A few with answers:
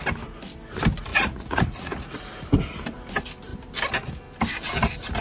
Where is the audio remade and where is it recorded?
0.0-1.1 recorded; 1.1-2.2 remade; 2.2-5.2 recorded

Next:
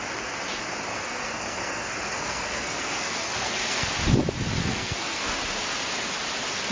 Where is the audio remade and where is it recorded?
0.0-0.9 recorded; 0.9-3.9 remade; 3.9-4.6 recorded; 4.6-5.4 remade; 5.4-6.7 recorded

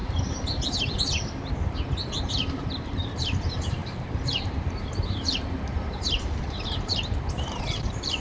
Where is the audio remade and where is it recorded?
0.0-2.3 recorded; 2.3-8.2 remade

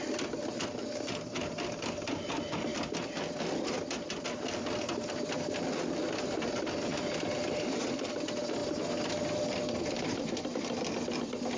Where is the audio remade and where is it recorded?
0.0-11.6 recorded

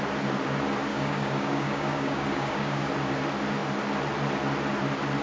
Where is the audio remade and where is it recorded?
0.0-0.9 recorded; 0.9-2.9 remade; 2.9-5.2 recorded

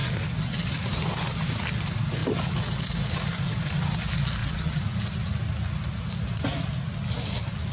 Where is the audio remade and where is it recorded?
0.0-4.4 recorded; 4.4-5.0 remade; 5.0-7.7 recorded